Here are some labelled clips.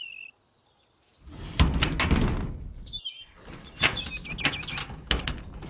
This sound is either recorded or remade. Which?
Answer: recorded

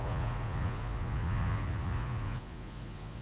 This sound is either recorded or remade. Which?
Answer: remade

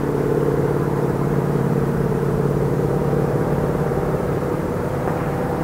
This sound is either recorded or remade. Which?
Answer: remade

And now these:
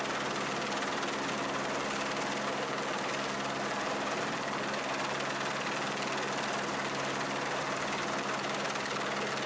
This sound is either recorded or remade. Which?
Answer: recorded